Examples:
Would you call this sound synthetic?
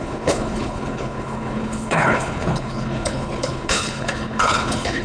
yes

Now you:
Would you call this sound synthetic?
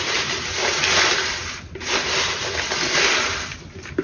no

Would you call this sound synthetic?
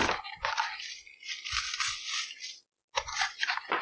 no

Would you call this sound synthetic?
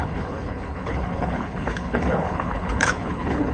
yes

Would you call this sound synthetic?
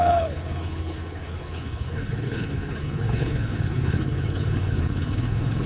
yes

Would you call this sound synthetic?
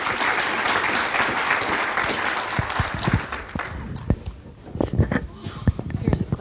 no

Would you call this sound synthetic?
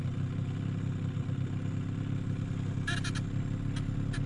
no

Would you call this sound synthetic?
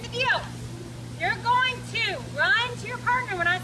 no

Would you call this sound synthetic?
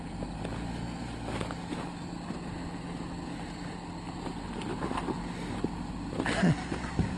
no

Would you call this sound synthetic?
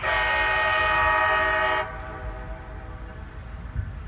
no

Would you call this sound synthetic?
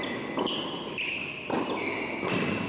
no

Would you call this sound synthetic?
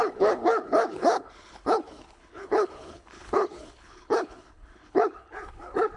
yes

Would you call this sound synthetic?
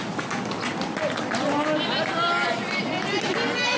no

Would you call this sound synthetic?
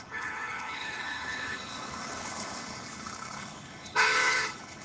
yes